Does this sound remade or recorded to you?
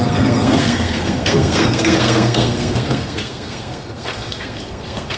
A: remade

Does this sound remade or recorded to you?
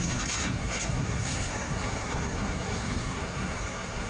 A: remade